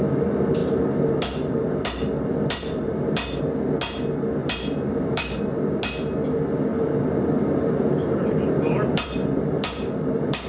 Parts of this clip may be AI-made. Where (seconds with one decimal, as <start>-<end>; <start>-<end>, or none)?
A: 0.6-3.4; 4.4-5.4; 6.7-10.5